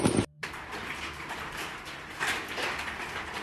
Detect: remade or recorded remade